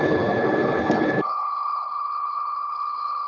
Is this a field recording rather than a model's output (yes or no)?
no